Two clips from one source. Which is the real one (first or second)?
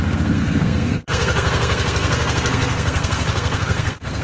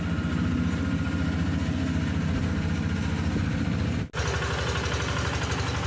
second